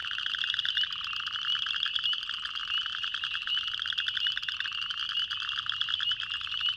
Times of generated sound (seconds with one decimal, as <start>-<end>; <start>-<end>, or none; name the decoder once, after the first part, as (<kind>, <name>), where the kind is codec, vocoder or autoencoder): none